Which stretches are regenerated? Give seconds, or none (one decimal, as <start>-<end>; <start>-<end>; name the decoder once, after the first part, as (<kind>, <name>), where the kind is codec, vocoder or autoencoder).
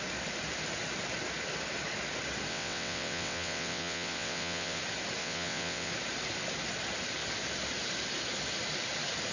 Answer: 2.5-4.8 (vocoder, WaveNeXt); 5.2-5.9